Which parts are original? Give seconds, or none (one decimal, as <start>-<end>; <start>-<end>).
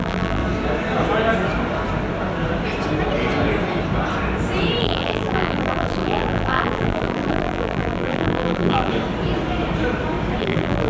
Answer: 0.4-4.8; 8.9-10.4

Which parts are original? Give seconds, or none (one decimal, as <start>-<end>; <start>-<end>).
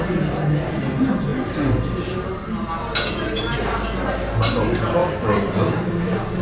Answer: 0.0-5.0; 5.9-6.4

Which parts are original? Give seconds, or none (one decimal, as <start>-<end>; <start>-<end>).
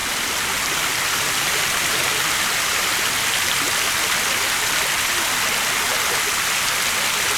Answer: 2.8-7.4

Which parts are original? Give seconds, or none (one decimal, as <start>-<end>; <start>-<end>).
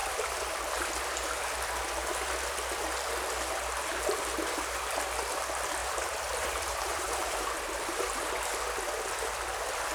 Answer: 0.9-5.8; 8.3-9.9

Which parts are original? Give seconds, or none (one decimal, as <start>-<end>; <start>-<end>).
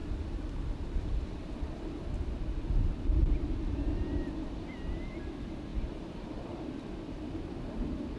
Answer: 0.0-5.7; 7.3-8.2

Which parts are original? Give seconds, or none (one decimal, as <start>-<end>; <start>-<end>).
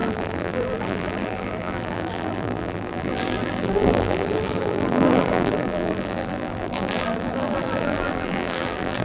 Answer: none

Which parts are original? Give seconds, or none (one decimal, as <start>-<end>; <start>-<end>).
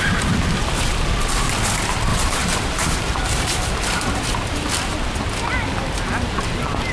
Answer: 0.0-2.1; 4.7-6.9